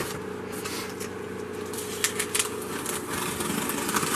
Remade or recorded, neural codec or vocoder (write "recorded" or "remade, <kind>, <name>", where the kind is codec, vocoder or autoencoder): recorded